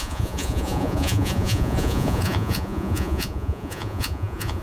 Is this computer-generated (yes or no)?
yes